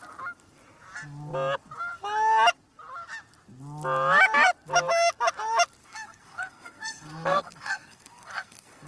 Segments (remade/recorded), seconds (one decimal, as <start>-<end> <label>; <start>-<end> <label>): 0.0-5.8 recorded; 5.8-8.9 remade